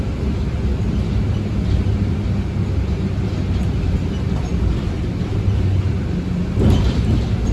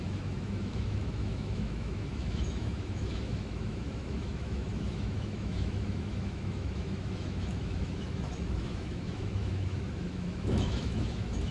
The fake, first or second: second